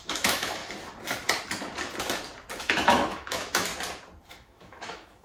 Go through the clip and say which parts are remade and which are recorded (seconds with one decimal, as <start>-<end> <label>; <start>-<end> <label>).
0.0-0.6 remade; 0.6-2.6 recorded; 2.6-3.7 remade; 3.7-4.3 recorded; 4.3-5.2 remade